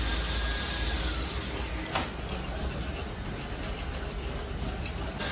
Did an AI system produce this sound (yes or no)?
no